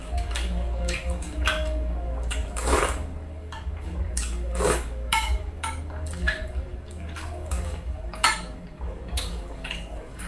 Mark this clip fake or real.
fake